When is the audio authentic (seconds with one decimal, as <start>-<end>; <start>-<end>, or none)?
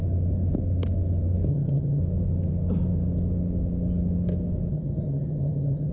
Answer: 0.0-1.5; 2.0-4.7